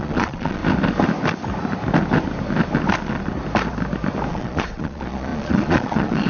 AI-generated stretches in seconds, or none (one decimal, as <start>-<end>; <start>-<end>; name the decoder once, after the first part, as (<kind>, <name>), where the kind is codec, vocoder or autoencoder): 0.0-0.6 (vocoder, Vocos); 4.3-6.3